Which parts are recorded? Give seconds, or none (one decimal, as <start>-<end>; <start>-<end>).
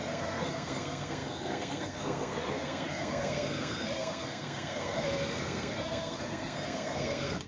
none